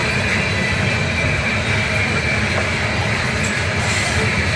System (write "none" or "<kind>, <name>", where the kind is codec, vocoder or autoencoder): none